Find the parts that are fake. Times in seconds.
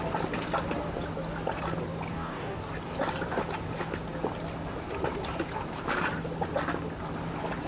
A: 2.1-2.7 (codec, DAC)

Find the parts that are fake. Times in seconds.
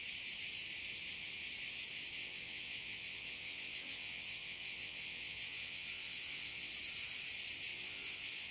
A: 2.2-6.7 (vocoder, WaveNeXt); 7.7-8.5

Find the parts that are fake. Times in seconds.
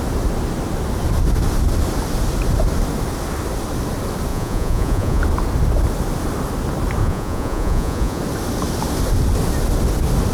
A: 4.3-5.2 (vocoder, Vocos); 7.0-8.2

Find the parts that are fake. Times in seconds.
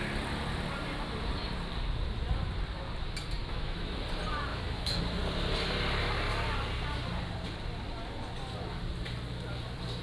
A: 3.4-4.0 (autoencoder, DAC-VAE); 4.5-5.0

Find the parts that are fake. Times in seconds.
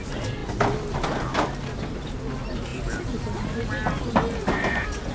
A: none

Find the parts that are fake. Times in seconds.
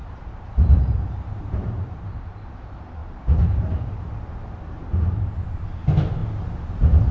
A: 0.0-2.5 (vocoder, BigVGAN v2); 3.0-4.0; 6.2-7.1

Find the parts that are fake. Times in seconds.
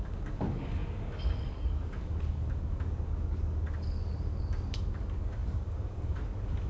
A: 0.0-6.7 (codec, DAC)